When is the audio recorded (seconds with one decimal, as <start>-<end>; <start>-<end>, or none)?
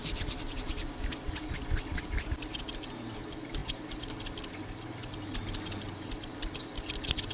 0.0-7.3